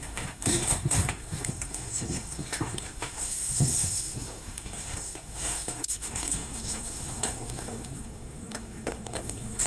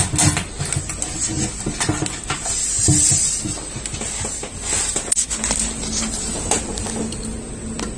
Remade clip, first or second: first